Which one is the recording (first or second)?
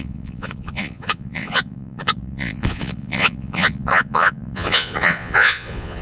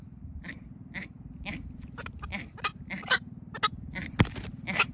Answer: second